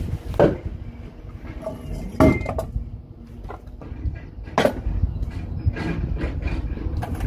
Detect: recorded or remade recorded